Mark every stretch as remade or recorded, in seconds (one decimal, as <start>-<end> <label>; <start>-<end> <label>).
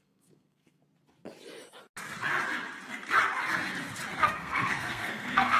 0.0-0.8 remade; 0.8-4.2 recorded; 4.2-5.6 remade